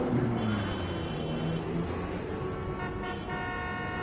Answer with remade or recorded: recorded